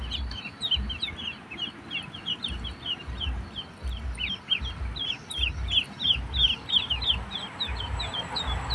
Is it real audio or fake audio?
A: real